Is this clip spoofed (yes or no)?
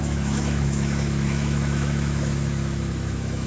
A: yes